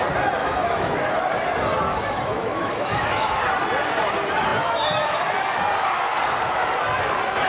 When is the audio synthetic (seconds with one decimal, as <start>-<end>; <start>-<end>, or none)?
0.4-1.2; 1.9-3.4